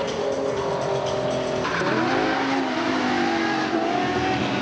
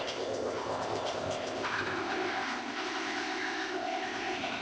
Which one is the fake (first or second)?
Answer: second